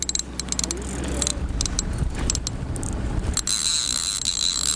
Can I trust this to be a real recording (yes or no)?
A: yes